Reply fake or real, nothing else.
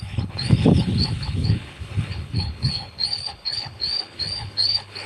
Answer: fake